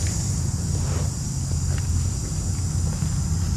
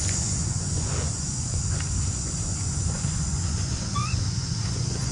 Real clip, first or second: first